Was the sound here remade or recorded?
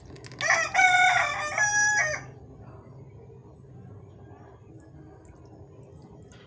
recorded